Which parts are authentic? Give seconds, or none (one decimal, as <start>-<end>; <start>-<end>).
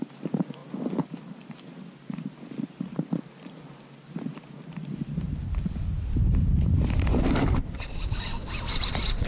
0.0-9.3